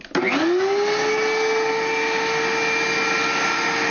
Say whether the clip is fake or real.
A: real